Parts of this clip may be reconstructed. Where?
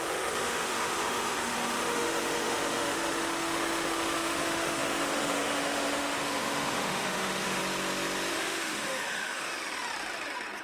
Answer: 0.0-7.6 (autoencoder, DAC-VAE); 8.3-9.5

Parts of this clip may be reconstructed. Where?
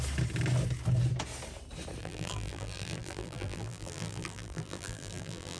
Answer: 2.0-5.6 (vocoder, BigVGAN v2)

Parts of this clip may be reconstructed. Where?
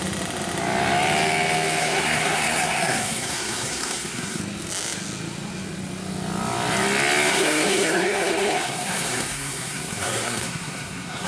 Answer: 1.8-4.4 (codec, SNAC); 7.3-11.3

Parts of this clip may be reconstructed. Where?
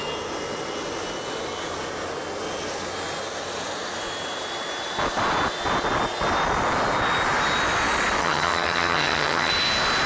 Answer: 8.2-9.5 (vocoder, HiFi-GAN)